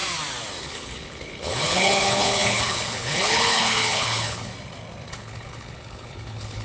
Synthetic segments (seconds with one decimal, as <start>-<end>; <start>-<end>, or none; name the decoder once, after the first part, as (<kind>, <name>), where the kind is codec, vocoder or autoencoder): 0.6-4.5 (codec, HILCodec); 5.1-6.6